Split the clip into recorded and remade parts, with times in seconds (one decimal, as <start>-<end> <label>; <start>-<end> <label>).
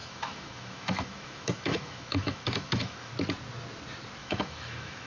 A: 0.0-3.1 remade; 3.1-4.2 recorded; 4.2-5.1 remade